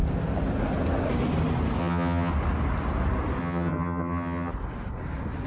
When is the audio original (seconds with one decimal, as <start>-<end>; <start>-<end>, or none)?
0.0-1.8; 2.3-3.4; 4.5-5.5